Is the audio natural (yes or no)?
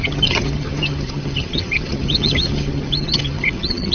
no